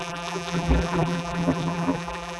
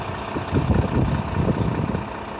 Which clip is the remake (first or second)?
first